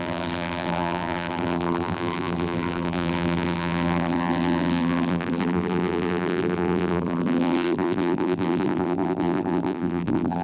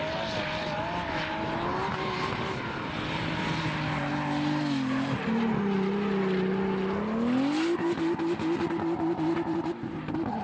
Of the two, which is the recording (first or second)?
second